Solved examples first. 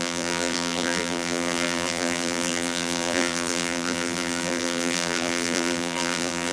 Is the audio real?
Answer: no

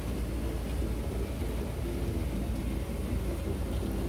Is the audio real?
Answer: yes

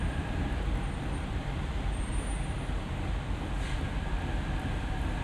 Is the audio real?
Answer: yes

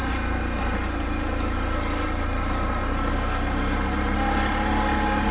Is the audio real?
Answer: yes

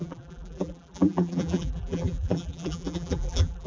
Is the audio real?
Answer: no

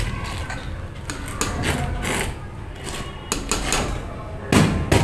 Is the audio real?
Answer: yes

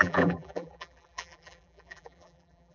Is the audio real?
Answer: no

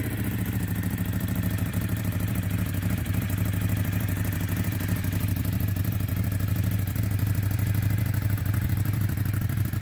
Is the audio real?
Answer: no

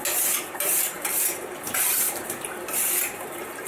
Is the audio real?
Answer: no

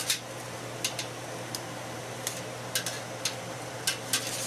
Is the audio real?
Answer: yes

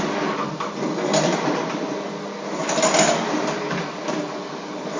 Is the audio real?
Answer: yes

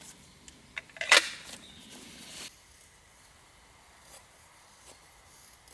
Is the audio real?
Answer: yes